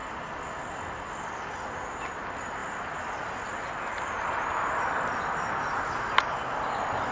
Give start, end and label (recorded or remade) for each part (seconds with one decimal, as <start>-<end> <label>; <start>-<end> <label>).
0.0-7.1 recorded